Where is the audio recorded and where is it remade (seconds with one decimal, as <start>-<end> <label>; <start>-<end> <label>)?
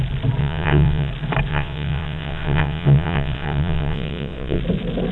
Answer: 0.0-0.4 recorded; 0.4-1.1 remade; 1.1-1.5 recorded; 1.5-4.6 remade; 4.6-5.1 recorded